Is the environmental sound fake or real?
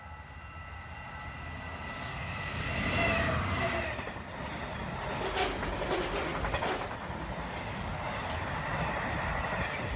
real